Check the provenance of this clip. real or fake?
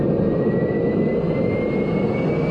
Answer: real